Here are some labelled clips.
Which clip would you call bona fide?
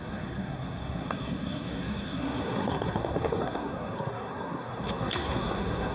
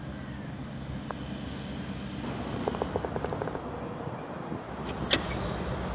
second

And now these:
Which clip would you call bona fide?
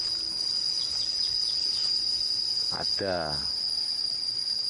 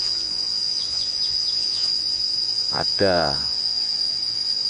first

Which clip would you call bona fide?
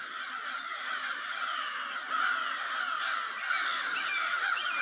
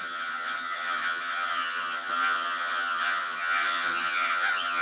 first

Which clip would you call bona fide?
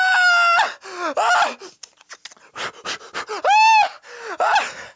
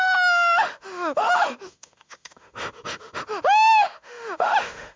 first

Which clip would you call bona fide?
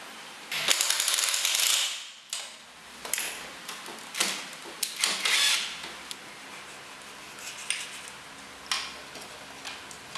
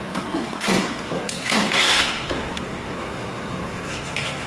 first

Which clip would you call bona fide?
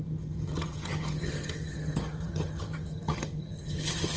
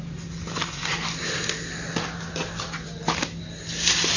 second